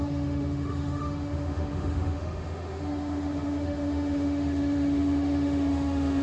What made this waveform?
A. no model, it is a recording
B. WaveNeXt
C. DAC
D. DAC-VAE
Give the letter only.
D